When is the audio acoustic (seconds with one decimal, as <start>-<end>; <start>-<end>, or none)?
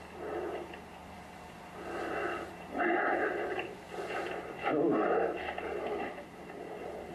0.0-1.0; 4.2-7.1